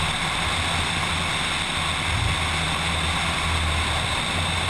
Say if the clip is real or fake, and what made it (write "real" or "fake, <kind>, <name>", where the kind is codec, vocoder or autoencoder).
real